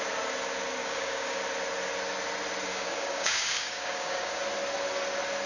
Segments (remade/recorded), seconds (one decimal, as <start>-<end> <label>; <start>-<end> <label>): 0.0-0.8 recorded; 0.8-1.4 remade; 1.4-2.7 recorded; 2.7-4.4 remade; 4.4-5.5 recorded